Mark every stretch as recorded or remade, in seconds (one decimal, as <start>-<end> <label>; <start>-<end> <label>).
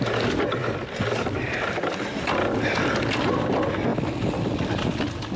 0.0-5.4 recorded